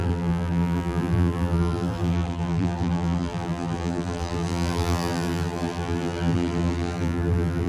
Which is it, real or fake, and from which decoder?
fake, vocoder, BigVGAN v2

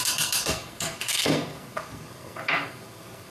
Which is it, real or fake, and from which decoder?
fake, codec, SNAC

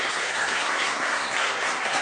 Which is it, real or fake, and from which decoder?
fake, codec, SNAC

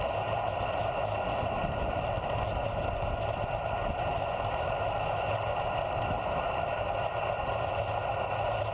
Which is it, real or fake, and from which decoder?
real